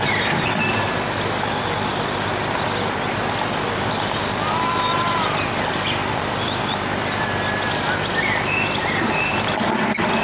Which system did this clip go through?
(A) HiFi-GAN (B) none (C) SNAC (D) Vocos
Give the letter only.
B